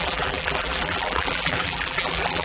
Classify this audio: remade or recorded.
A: remade